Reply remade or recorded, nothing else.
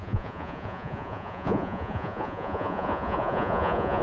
remade